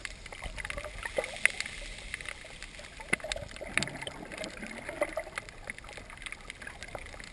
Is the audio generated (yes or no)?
no